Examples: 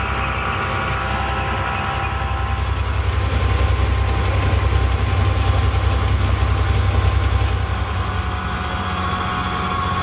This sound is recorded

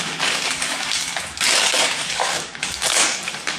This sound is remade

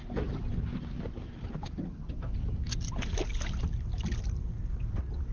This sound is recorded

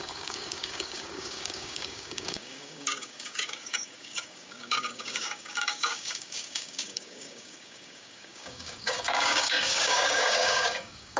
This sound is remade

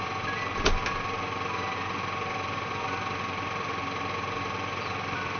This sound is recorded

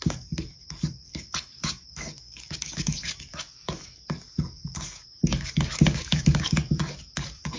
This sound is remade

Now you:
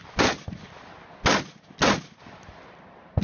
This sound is recorded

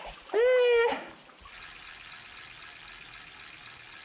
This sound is recorded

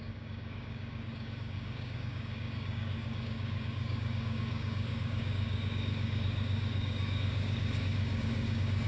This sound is remade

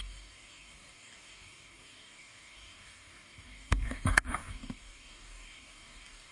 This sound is remade